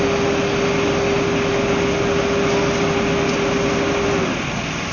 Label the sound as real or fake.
real